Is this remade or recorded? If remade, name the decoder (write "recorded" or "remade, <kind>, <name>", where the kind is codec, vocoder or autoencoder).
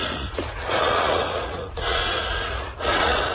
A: remade, vocoder, Vocos